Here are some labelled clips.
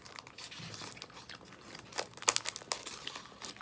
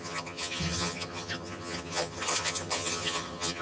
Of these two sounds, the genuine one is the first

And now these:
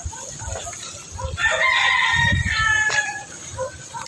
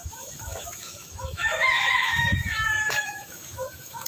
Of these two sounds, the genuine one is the first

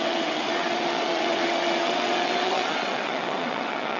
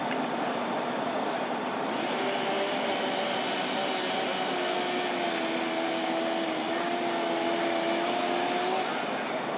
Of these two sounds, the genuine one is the second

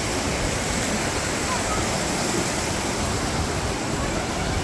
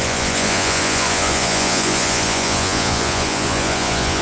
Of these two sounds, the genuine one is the first